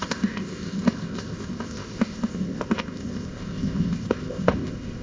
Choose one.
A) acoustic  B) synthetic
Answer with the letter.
B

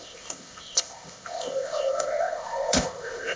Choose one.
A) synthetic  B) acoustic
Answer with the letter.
A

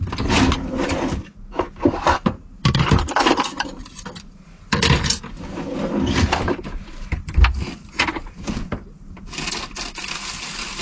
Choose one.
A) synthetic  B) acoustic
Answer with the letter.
B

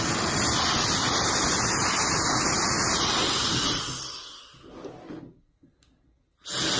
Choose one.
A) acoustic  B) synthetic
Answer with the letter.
A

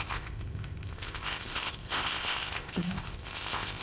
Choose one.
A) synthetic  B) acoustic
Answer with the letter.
A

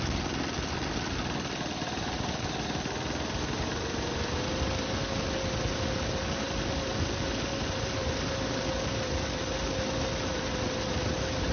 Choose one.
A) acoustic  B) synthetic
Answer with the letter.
A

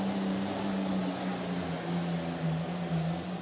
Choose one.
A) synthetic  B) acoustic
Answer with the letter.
B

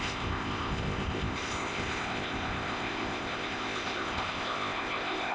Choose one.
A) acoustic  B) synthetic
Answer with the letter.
B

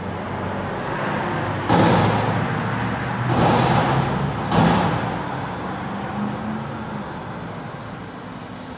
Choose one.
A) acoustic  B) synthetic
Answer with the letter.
A